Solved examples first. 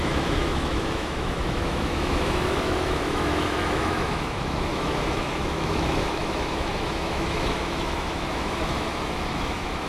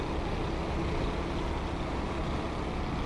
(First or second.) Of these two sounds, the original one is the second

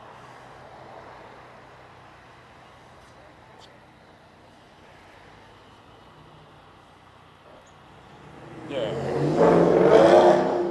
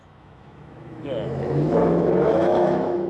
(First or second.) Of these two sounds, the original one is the first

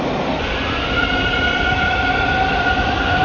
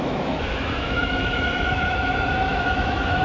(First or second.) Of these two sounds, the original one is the first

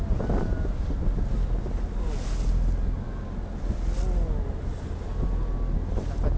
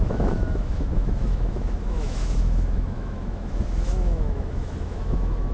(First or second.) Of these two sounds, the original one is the first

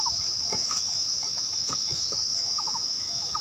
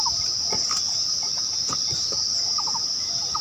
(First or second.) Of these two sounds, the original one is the second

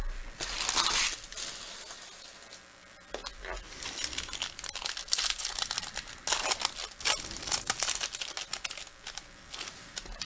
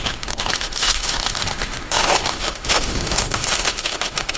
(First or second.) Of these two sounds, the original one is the first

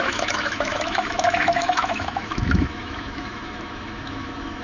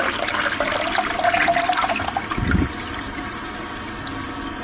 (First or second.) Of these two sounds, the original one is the second